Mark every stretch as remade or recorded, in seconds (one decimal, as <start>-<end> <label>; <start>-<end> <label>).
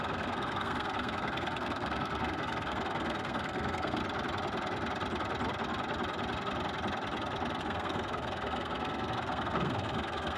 0.0-4.0 remade; 4.0-7.6 recorded; 7.6-10.4 remade